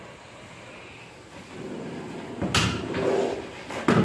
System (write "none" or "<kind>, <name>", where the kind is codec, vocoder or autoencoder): none